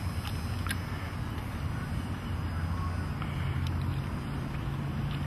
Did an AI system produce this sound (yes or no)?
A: no